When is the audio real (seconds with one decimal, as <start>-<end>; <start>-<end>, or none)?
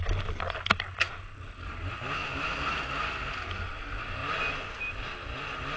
0.0-5.8